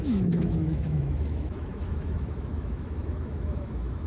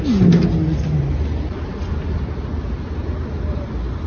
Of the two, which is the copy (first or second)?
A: first